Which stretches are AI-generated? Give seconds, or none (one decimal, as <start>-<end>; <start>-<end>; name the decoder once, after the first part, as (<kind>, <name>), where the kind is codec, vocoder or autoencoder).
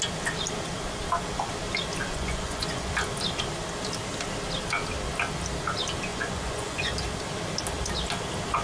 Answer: 2.1-2.9 (vocoder, Vocos); 6.1-6.9